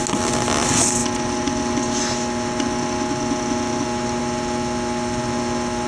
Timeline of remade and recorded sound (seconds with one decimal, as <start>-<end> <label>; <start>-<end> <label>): 0.0-5.9 recorded